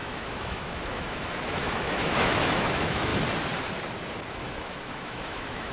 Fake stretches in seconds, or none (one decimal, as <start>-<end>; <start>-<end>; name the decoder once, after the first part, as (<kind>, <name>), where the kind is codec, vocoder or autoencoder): 0.0-3.1 (autoencoder, DAC-VAE); 4.2-5.7